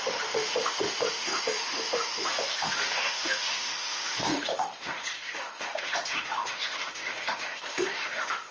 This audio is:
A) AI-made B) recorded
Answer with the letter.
A